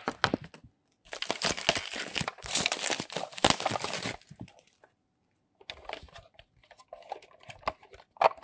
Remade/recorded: recorded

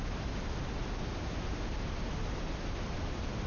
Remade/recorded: recorded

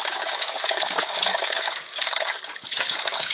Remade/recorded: remade